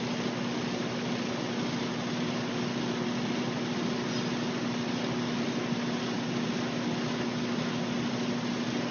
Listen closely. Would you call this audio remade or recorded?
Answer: recorded